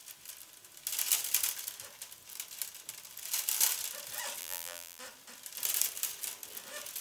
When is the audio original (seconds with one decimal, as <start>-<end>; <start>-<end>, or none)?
0.0-4.4; 5.0-7.0